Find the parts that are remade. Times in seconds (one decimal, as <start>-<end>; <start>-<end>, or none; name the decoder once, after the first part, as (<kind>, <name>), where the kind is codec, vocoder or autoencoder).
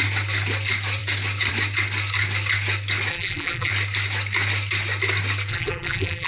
3.1-3.7 (vocoder, BigVGAN v2); 5.5-6.3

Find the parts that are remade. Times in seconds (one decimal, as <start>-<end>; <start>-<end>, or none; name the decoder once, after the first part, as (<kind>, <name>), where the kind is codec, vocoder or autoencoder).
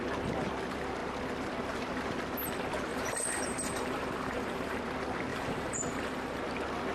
2.9-4.8 (vocoder, BigVGAN v2); 5.3-6.4